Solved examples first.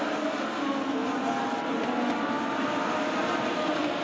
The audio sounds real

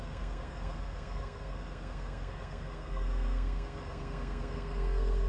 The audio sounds fake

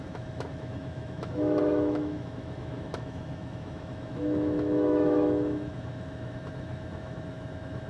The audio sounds fake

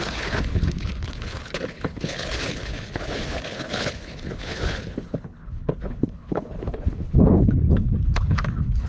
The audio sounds fake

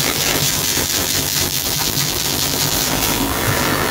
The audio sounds fake